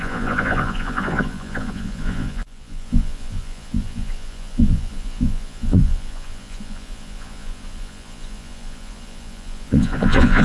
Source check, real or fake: fake